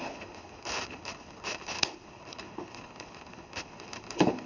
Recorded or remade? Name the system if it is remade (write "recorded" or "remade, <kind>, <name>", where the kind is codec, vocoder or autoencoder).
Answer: remade, codec, HILCodec